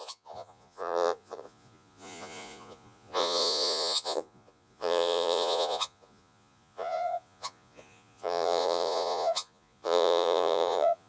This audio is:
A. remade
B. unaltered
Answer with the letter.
A